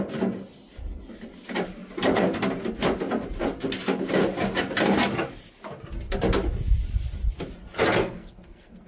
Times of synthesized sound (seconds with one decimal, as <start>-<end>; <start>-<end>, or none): 8.0-8.9